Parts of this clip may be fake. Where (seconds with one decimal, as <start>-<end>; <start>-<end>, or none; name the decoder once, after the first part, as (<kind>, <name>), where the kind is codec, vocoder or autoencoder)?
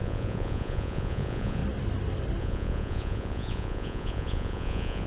0.0-1.6 (vocoder, Vocos); 2.4-5.1